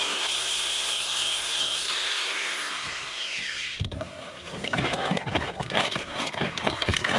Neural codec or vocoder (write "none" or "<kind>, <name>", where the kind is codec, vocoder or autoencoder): codec, SNAC